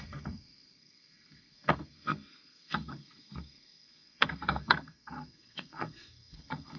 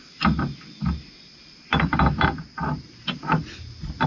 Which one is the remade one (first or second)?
first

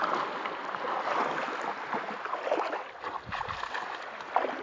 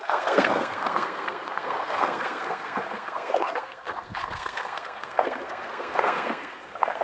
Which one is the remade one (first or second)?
second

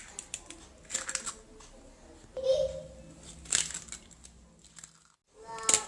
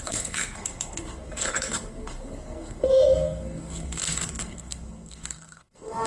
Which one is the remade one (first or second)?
second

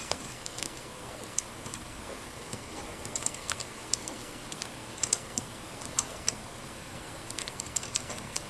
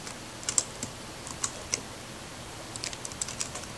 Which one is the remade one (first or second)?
first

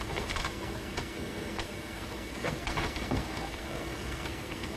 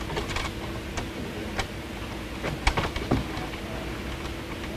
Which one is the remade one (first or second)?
first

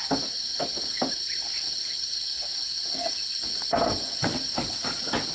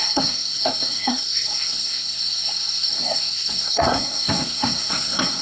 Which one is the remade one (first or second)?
second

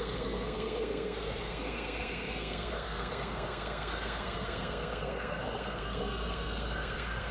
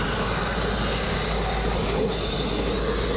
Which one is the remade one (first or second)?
first